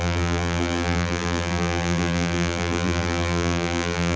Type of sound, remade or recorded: remade